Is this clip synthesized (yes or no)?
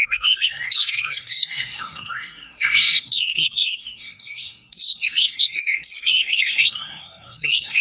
yes